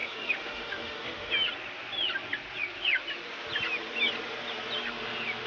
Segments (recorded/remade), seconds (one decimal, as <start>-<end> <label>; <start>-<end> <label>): 0.0-1.3 remade; 1.3-5.5 recorded